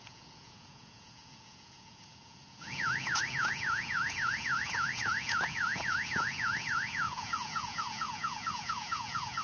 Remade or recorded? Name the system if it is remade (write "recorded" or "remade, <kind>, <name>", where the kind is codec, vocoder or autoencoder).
remade, vocoder, Vocos